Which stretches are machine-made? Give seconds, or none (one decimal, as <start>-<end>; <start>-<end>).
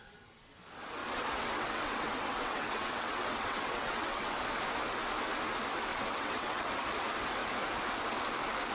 1.0-4.4; 5.9-6.7